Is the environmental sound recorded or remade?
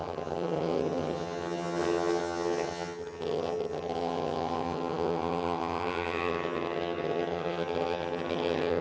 remade